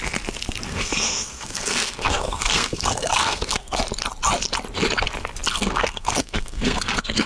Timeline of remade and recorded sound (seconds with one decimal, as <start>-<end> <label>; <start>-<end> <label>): 0.0-0.7 recorded; 0.7-3.8 remade; 3.8-5.5 recorded; 5.5-7.3 remade